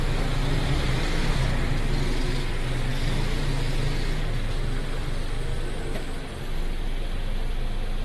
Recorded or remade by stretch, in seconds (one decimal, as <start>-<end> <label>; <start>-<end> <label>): 0.0-0.4 recorded; 0.4-1.7 remade; 1.7-8.0 recorded